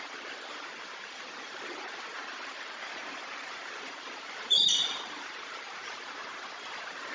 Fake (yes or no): yes